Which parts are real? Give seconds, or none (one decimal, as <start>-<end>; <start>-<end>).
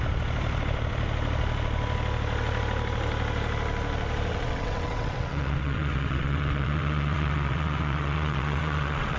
0.0-4.3